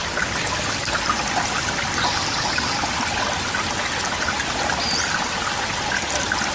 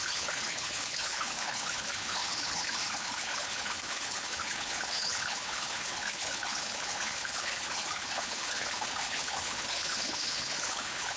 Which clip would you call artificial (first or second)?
second